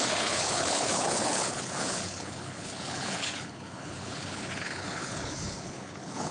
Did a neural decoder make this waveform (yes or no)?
yes